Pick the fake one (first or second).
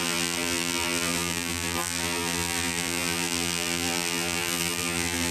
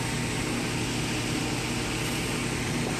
first